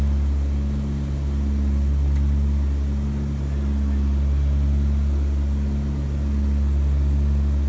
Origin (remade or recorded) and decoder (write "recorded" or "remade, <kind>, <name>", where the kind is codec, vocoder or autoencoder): recorded